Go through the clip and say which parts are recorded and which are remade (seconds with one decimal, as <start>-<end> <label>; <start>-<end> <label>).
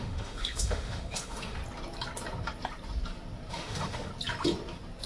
0.0-1.6 remade; 1.6-3.5 recorded; 3.5-4.1 remade; 4.1-5.1 recorded